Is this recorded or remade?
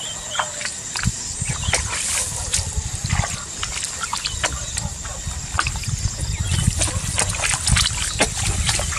recorded